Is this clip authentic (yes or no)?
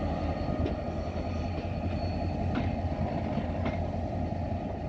yes